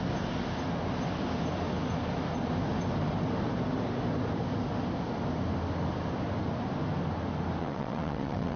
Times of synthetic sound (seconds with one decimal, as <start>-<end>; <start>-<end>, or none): 7.6-8.6